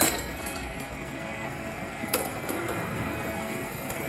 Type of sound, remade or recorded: remade